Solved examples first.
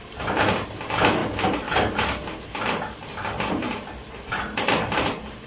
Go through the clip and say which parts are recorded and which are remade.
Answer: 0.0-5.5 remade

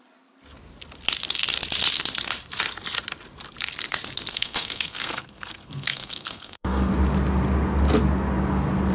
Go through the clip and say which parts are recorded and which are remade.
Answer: 0.0-4.3 recorded; 4.3-6.9 remade; 6.9-8.9 recorded

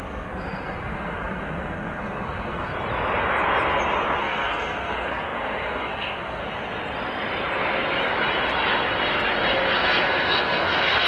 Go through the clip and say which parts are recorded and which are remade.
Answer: 0.0-2.7 remade; 2.7-4.2 recorded; 4.2-6.4 remade; 6.4-9.7 recorded; 9.7-11.1 remade

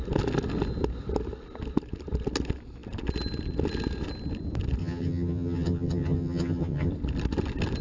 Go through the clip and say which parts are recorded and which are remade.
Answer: 0.0-4.8 recorded; 4.8-6.9 remade; 6.9-7.8 recorded